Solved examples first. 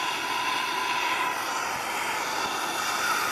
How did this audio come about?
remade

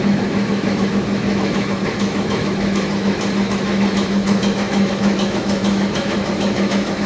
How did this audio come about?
remade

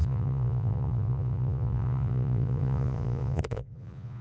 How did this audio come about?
remade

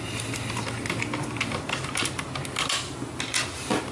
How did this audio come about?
recorded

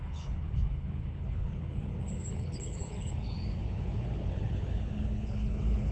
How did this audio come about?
remade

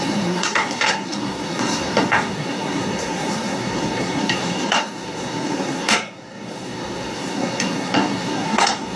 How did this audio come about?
remade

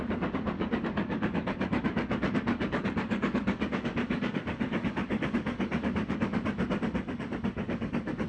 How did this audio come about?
remade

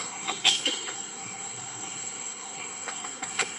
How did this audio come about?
remade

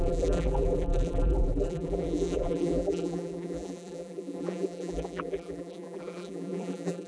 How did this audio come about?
remade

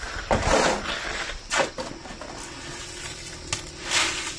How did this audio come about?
recorded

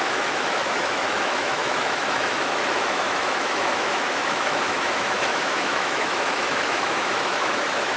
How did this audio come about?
remade